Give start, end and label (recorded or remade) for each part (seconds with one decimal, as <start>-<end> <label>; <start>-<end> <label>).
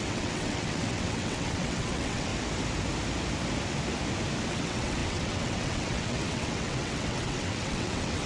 0.0-2.3 remade; 2.3-4.5 recorded; 4.5-8.3 remade